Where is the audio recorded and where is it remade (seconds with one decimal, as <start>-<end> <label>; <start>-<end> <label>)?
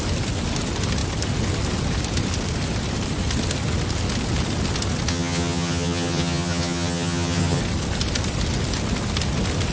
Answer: 0.0-5.1 recorded; 5.1-7.6 remade; 7.6-9.7 recorded